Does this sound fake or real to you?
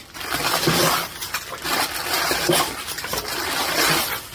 real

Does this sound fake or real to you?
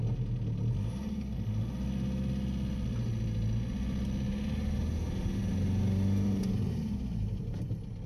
real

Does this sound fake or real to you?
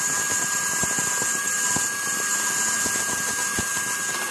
real